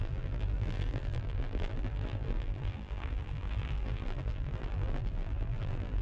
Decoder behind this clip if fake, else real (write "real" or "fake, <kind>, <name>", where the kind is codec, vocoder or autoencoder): fake, vocoder, BigVGAN v2